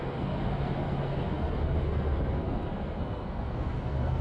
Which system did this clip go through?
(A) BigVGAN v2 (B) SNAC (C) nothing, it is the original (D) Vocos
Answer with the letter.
B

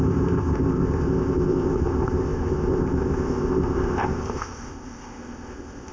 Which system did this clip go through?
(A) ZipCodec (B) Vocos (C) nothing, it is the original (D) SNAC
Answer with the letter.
A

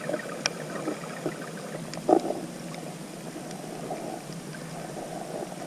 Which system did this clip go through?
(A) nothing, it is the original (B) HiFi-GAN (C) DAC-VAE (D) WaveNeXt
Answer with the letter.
A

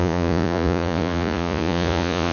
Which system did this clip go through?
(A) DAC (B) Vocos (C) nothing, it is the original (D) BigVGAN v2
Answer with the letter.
B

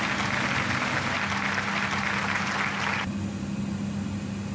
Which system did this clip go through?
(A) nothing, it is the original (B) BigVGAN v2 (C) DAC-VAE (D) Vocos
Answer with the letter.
A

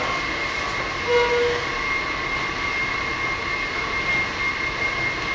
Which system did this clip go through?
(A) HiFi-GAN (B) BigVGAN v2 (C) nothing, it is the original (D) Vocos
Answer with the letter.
C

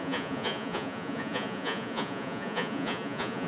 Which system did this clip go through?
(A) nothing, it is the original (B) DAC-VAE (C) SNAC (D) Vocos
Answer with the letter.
D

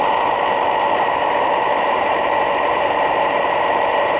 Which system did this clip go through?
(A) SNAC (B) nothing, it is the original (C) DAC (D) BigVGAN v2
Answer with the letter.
D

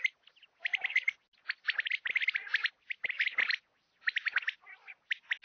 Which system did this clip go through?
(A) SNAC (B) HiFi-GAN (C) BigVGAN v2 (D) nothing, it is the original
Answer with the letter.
D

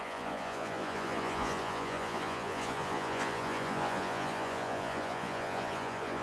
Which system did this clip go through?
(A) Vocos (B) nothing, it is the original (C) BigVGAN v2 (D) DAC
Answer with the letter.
A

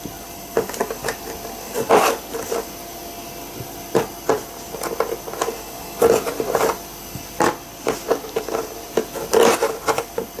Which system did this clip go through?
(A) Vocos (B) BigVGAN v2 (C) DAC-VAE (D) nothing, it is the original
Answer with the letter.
D